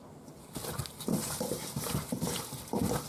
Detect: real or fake real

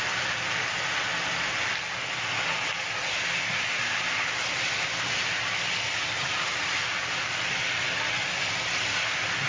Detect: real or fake real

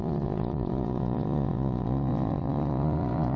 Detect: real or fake fake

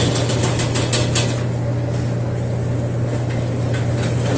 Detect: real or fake real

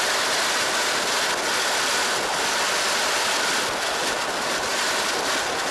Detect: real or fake real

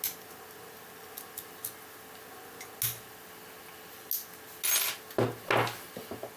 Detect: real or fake real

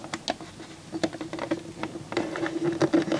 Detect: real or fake real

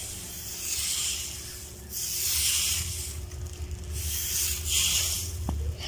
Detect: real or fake real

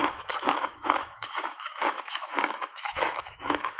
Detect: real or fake fake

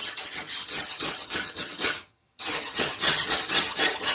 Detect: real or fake fake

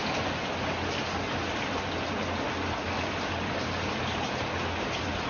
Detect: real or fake real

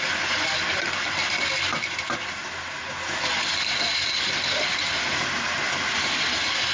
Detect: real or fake real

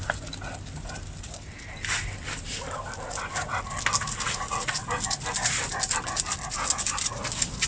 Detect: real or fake real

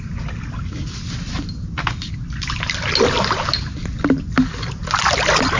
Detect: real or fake real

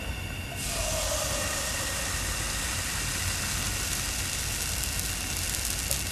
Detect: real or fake real